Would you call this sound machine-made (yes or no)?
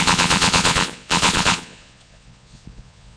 yes